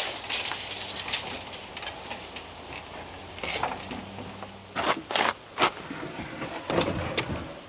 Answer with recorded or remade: recorded